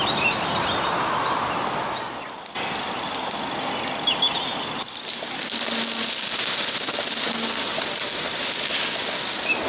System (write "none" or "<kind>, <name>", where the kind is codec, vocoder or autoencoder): none